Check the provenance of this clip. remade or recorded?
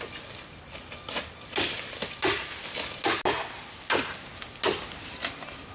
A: recorded